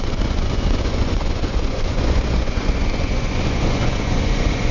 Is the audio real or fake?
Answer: fake